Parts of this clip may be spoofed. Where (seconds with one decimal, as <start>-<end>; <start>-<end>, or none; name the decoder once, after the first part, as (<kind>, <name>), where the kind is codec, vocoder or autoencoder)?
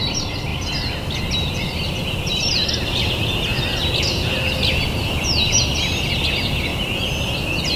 none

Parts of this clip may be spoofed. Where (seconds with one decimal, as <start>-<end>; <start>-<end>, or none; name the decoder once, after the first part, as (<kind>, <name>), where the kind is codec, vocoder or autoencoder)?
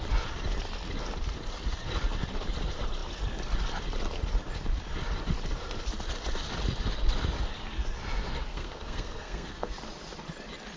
8.5-9.7 (codec, SNAC)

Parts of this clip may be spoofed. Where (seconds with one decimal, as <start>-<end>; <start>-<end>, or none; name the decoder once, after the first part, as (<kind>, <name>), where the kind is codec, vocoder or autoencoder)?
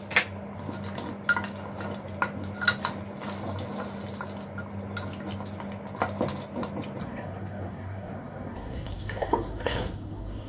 7.0-10.5 (codec, SNAC)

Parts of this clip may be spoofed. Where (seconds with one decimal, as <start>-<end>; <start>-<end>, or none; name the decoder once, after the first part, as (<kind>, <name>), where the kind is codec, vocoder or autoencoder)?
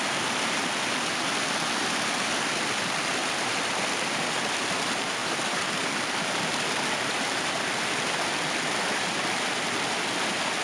none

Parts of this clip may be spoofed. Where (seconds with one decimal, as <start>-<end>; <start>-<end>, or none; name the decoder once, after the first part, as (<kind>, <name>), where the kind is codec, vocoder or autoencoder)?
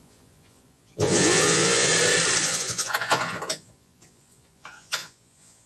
0.0-1.9 (vocoder, Vocos); 2.4-5.7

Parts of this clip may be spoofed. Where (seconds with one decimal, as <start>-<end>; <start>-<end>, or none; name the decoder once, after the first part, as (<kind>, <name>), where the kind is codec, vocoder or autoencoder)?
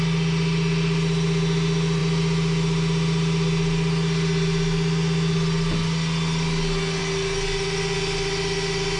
none